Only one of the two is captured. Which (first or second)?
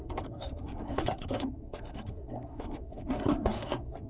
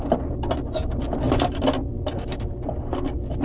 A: second